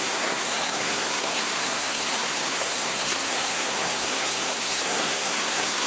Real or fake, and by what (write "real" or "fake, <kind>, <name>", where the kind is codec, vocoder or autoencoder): fake, codec, SNAC